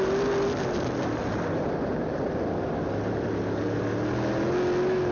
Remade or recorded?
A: recorded